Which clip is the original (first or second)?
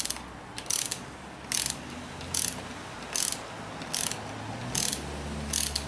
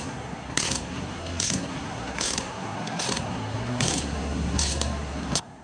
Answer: first